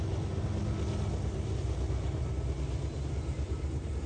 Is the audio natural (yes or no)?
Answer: yes